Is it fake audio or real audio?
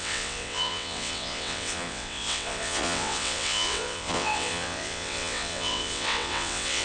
fake